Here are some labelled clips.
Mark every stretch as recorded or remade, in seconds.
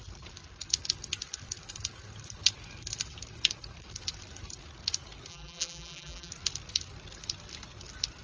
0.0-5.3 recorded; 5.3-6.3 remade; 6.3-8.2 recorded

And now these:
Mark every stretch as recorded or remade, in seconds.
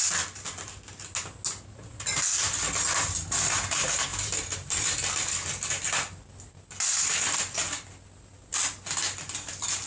0.0-4.1 recorded; 4.1-4.9 remade; 4.9-9.9 recorded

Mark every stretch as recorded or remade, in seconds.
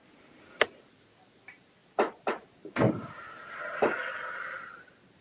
0.0-5.2 recorded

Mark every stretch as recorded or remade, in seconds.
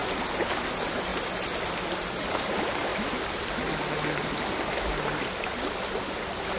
0.0-0.7 recorded; 0.7-1.1 remade; 1.1-2.2 recorded; 2.2-2.9 remade; 2.9-6.6 recorded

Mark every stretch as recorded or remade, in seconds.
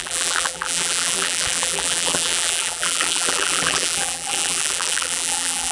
0.0-5.7 remade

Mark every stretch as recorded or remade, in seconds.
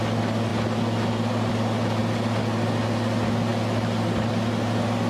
0.0-0.5 recorded; 0.5-1.5 remade; 1.5-5.1 recorded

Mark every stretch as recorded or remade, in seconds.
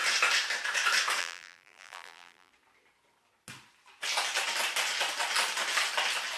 0.0-1.2 recorded; 1.2-2.5 remade; 2.5-6.4 recorded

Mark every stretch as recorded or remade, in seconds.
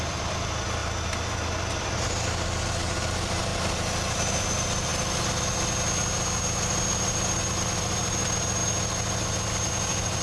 0.0-0.8 remade; 0.8-1.8 recorded; 1.8-3.5 remade; 3.5-4.1 recorded; 4.1-4.9 remade; 4.9-7.8 recorded; 7.8-8.6 remade; 8.6-9.7 recorded; 9.7-10.2 remade